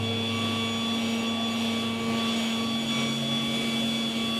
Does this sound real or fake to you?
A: real